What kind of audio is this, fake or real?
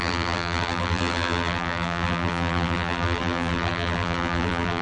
fake